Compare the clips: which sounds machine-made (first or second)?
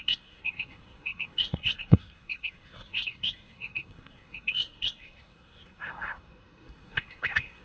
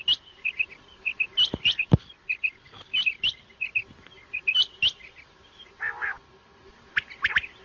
first